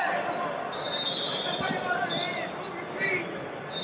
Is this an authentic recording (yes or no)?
no